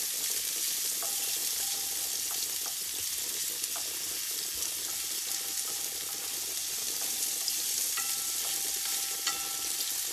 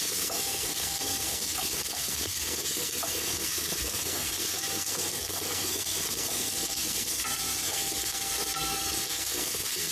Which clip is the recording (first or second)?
first